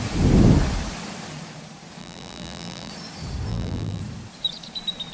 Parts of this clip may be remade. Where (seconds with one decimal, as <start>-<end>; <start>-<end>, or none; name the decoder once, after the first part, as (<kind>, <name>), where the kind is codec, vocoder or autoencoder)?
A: 2.0-2.9 (vocoder, BigVGAN v2); 3.5-4.0